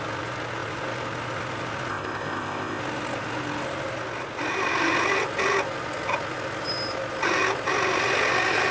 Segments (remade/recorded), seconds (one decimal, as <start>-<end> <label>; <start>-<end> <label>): 0.0-1.9 recorded; 1.9-2.8 remade; 2.8-8.7 recorded